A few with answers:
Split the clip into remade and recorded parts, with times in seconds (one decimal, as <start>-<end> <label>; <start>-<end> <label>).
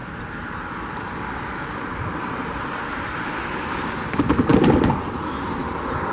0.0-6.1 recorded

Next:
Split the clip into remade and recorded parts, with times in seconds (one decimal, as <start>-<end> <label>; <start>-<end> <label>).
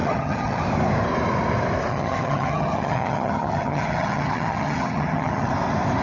0.0-0.6 remade; 0.6-1.9 recorded; 1.9-5.5 remade; 5.5-6.0 recorded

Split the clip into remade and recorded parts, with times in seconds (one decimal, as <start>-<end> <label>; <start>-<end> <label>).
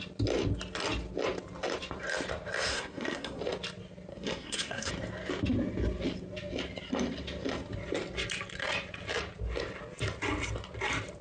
0.0-2.7 recorded; 2.7-3.4 remade; 3.4-4.1 recorded; 4.1-4.9 remade; 4.9-11.2 recorded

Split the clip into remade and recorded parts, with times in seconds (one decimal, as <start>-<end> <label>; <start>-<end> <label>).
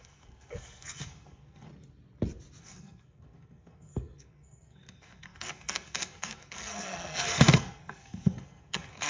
0.0-1.7 remade; 1.7-2.6 recorded; 2.6-9.1 remade